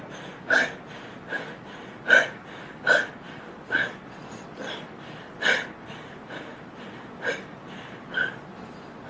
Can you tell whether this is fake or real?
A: real